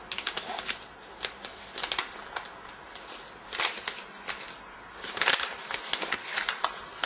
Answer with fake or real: real